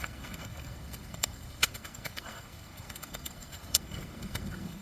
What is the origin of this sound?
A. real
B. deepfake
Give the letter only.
B